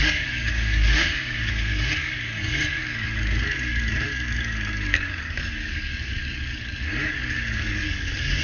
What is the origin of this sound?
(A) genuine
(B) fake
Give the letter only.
B